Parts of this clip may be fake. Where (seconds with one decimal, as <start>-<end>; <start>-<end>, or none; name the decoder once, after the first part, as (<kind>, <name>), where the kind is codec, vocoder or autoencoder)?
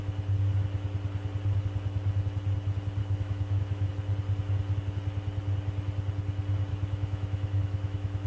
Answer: 3.0-3.9 (autoencoder, DAC-VAE); 6.7-8.3